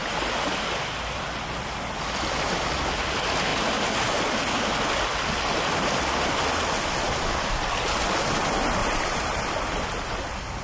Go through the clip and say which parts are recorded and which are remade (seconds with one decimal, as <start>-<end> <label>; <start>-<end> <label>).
0.0-8.8 recorded; 8.8-9.4 remade; 9.4-10.6 recorded